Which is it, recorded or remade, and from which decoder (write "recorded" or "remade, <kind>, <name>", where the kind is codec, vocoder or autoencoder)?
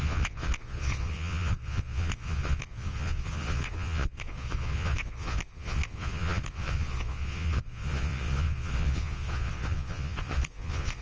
remade, vocoder, Vocos